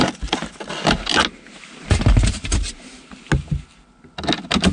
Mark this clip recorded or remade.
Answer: recorded